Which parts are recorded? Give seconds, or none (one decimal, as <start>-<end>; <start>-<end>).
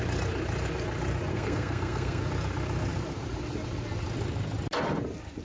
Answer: 0.0-1.3; 2.2-5.4